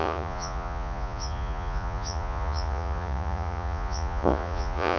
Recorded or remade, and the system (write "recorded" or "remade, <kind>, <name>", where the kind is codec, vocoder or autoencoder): remade, vocoder, Vocos